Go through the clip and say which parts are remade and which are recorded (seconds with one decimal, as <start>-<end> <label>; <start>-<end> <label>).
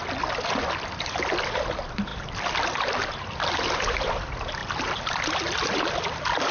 0.0-6.5 recorded